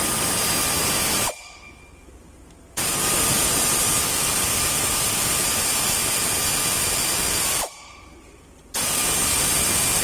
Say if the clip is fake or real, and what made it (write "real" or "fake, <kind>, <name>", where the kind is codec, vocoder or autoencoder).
real